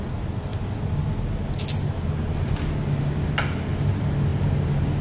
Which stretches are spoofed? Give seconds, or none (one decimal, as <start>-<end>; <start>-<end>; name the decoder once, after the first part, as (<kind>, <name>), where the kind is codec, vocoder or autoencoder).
none